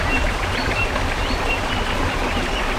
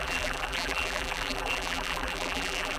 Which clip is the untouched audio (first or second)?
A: first